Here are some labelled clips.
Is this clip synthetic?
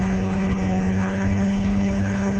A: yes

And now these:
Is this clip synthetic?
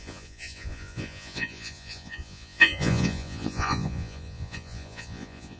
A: yes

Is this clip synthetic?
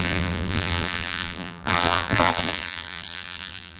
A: yes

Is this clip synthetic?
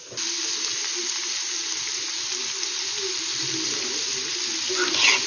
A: no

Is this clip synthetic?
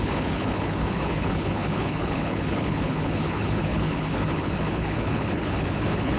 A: yes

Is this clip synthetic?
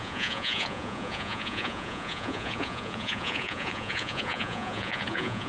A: yes